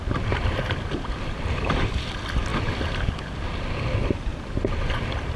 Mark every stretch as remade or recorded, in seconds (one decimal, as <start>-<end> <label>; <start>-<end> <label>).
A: 0.0-4.3 recorded; 4.3-4.9 remade; 4.9-5.4 recorded